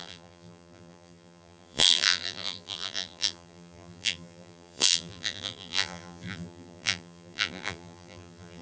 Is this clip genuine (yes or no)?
no